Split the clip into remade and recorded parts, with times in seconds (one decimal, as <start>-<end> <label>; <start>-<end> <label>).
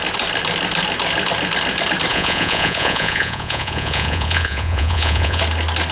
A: 0.0-2.1 recorded; 2.1-5.4 remade; 5.4-5.9 recorded